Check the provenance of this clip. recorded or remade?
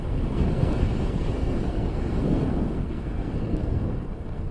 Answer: remade